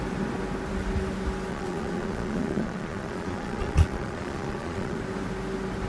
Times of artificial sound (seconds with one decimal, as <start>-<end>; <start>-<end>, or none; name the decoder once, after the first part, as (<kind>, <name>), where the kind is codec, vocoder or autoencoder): 1.5-5.0 (vocoder, Vocos)